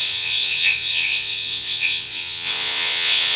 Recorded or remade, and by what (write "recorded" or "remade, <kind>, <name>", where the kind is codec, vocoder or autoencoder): remade, vocoder, WaveNeXt